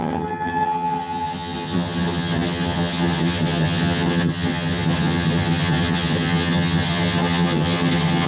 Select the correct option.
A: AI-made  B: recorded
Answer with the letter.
A